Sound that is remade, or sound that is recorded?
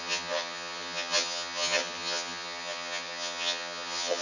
remade